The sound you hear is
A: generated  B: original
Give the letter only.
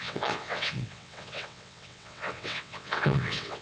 A